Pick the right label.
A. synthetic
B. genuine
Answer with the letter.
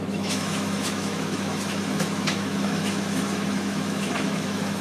A